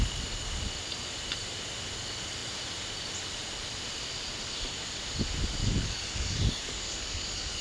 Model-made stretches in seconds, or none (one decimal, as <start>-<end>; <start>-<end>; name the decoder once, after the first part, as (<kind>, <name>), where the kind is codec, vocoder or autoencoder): 5.6-7.6 (codec, DAC)